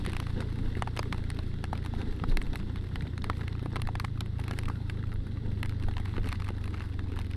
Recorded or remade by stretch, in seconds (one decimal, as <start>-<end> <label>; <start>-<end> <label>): 0.0-2.0 recorded; 2.0-6.4 remade; 6.4-7.4 recorded